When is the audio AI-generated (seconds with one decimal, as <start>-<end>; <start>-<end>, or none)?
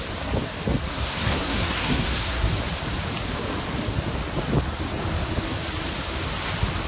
0.9-2.5